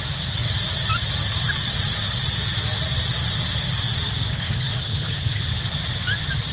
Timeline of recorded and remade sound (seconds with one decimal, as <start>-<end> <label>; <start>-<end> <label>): 0.0-4.3 recorded; 4.3-5.4 remade; 5.4-6.5 recorded